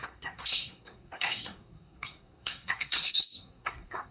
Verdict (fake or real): fake